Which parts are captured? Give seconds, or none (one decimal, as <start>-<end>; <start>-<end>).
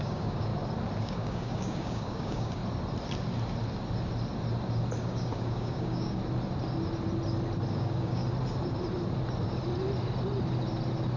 0.5-1.0; 2.6-5.0; 6.2-7.7; 8.2-11.2